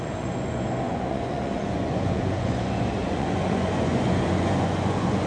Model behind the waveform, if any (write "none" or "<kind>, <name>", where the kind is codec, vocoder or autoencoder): vocoder, Vocos